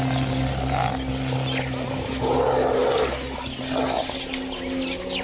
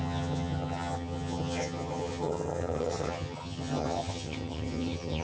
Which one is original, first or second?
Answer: first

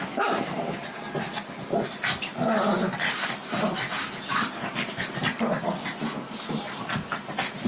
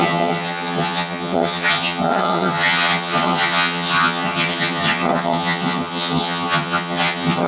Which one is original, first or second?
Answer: first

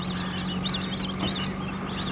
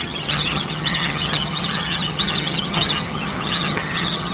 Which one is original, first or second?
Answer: first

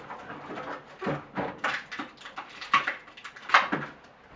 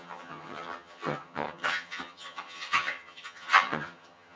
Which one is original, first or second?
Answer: first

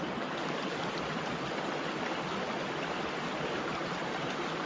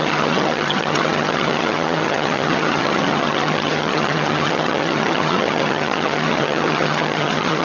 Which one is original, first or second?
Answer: first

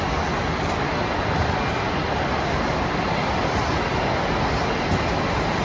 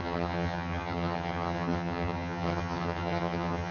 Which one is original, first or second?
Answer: first